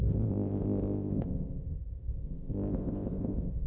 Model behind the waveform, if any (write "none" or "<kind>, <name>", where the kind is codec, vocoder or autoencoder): codec, ZipCodec